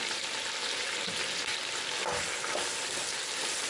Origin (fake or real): real